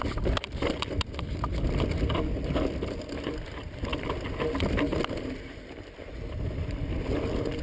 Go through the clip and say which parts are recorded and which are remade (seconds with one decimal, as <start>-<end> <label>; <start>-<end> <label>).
0.0-7.6 recorded